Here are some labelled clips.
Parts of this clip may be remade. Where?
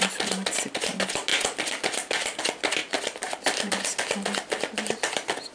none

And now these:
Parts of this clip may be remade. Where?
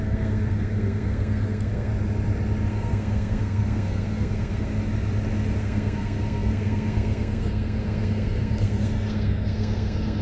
0.0-1.9; 2.7-4.7; 5.6-10.2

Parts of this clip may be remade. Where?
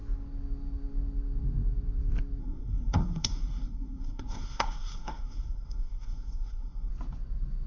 2.4-6.9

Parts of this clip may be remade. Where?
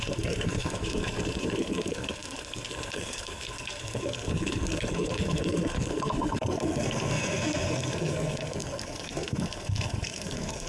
0.0-10.7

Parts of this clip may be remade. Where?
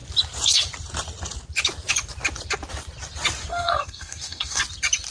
3.5-4.6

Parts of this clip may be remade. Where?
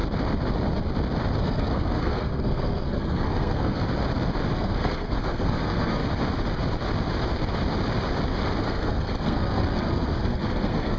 1.4-3.8; 4.5-6.0; 8.6-11.0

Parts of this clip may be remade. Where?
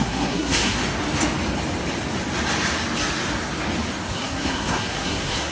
0.0-0.8; 4.1-5.5